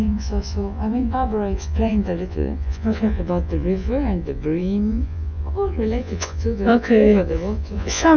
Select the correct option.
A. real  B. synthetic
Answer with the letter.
B